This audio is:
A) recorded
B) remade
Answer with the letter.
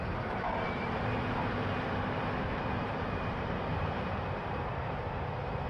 B